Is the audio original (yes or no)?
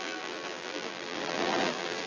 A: no